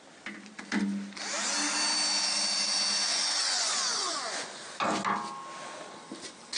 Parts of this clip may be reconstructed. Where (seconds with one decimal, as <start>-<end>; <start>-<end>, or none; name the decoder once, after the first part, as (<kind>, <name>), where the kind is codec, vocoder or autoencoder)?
3.1-4.8 (vocoder, Vocos)